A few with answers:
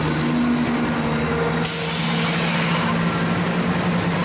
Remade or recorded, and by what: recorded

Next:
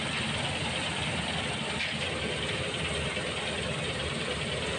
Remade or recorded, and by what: recorded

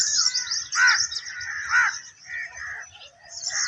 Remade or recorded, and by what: recorded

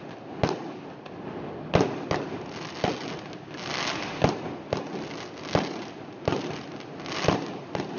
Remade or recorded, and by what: recorded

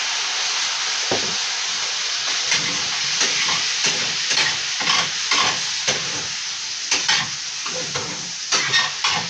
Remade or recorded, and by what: recorded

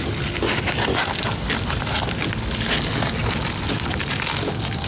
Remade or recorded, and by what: recorded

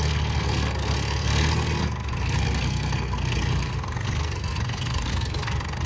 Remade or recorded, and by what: remade, codec, SNAC